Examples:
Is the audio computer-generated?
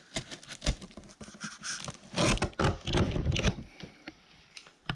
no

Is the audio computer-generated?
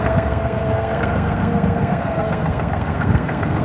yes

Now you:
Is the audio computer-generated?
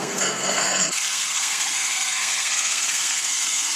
yes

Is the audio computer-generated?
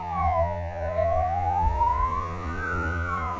yes